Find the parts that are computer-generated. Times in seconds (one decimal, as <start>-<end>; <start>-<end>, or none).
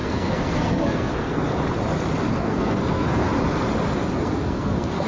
0.0-1.5; 2.4-3.3; 4.2-5.1